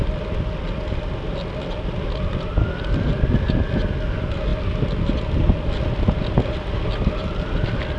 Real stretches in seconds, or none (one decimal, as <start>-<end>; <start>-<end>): 0.0-8.0

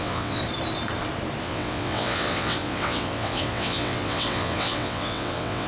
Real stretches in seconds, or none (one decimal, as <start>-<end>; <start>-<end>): 0.4-1.4

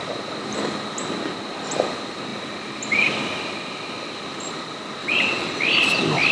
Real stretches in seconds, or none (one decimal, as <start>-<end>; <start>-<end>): 0.0-5.0; 5.6-6.3

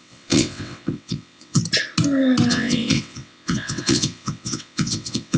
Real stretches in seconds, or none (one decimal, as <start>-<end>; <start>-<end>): 1.6-2.5

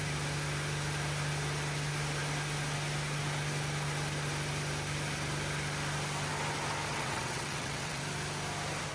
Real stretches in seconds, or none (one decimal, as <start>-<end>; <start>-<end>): 0.0-6.9; 8.0-8.9

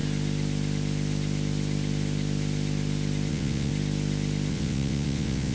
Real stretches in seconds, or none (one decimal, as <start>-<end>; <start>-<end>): 0.0-3.3; 3.7-4.5

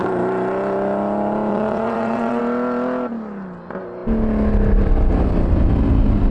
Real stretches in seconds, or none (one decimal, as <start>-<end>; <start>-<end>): 0.0-1.5; 2.4-6.3

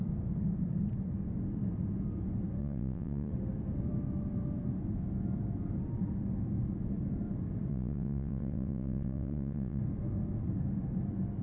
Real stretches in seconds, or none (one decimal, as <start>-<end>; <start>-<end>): 0.0-2.6; 3.3-7.7; 9.8-11.4